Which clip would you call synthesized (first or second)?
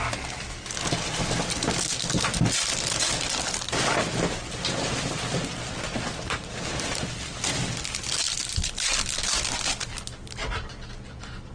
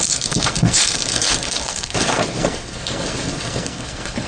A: second